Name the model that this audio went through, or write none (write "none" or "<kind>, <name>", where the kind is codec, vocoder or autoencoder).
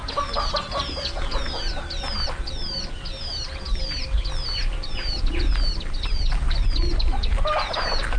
none